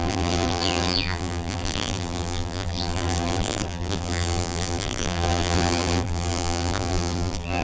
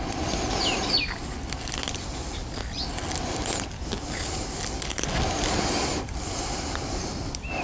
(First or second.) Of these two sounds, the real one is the second